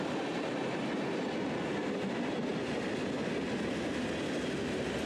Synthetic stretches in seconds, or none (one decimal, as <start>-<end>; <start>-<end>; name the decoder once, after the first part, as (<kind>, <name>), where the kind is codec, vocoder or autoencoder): none